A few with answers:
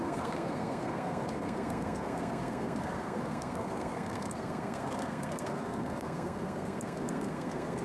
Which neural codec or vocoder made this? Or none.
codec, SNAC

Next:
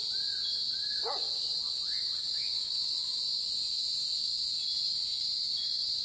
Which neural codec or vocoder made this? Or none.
none